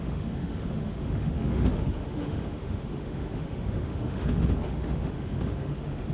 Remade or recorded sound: remade